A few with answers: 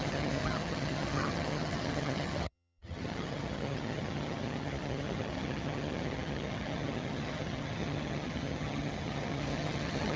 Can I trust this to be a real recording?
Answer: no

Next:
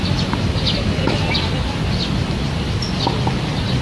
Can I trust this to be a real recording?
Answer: yes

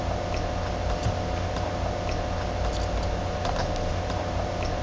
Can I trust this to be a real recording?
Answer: yes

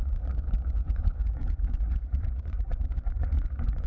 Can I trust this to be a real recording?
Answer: no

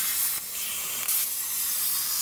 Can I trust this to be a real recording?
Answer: yes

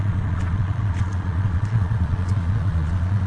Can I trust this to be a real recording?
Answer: no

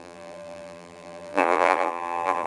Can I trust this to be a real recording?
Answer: no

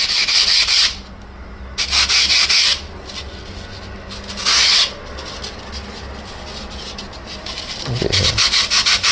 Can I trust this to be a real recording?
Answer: yes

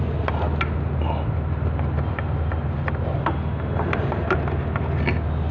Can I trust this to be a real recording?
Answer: yes